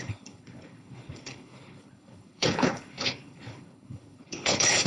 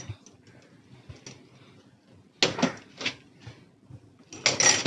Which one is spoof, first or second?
first